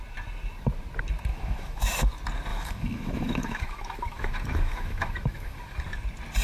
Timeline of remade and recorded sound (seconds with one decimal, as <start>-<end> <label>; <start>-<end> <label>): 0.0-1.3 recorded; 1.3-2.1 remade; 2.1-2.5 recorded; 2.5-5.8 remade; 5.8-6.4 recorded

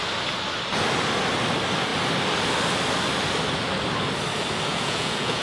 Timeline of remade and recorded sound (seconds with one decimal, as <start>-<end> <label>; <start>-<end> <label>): 0.0-4.7 recorded; 4.7-5.4 remade

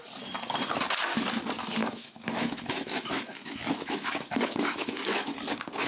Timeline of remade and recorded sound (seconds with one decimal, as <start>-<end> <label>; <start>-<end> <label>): 0.0-1.8 recorded; 1.8-5.3 remade; 5.3-5.9 recorded

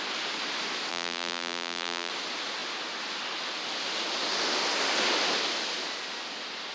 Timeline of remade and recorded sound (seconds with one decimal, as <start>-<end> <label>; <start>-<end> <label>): 0.0-0.9 recorded; 0.9-2.1 remade; 2.1-6.7 recorded

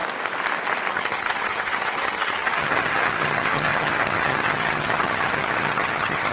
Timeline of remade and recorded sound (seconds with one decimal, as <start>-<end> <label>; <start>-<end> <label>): 0.0-0.9 recorded; 0.9-6.3 remade

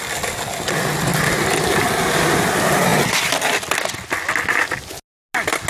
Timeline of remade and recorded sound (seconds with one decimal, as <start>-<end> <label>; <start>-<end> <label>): 0.0-5.7 recorded